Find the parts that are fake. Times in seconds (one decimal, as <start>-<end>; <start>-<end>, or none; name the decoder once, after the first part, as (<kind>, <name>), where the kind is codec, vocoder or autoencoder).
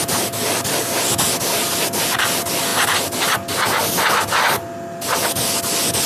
none